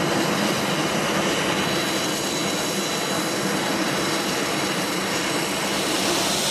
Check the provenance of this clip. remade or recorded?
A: recorded